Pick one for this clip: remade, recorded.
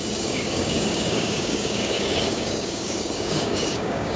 remade